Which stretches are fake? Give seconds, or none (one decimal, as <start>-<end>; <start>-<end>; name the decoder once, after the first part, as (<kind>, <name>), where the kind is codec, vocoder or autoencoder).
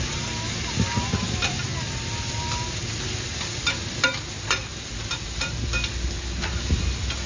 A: none